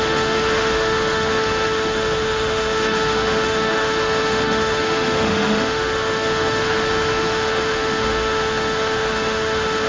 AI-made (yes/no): yes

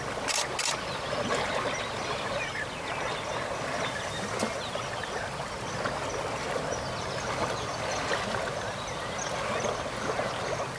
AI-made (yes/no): no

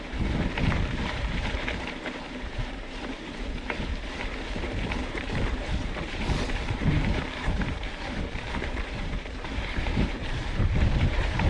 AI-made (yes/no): yes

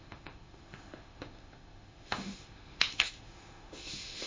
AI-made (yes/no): yes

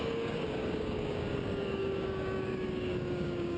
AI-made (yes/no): yes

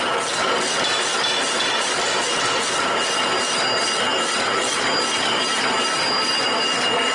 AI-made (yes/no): no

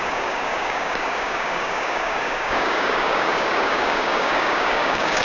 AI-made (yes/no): yes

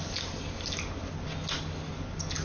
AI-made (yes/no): no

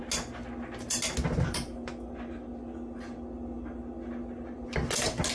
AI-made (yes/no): no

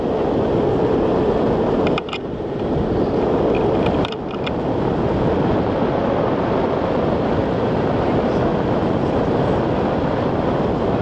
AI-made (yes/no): no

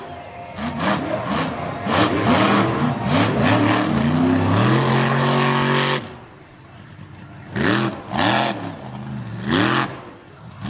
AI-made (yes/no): no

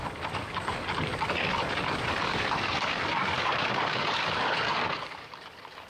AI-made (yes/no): yes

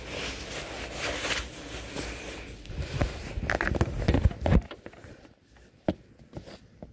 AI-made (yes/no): no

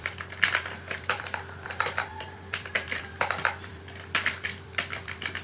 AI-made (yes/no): yes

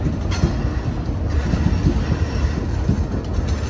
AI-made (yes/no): no